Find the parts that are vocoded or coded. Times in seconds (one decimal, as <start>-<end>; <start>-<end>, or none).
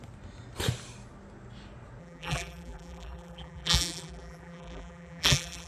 2.0-5.7